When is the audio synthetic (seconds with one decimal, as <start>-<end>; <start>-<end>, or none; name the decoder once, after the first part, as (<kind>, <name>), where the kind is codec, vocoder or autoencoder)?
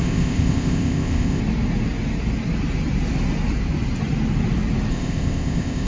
0.0-1.4 (codec, ZipCodec); 4.9-5.9